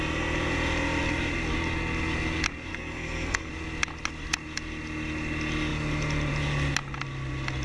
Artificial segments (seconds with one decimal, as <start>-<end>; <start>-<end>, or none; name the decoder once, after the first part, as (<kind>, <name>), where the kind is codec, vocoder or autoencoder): 2.7-3.5 (codec, SNAC)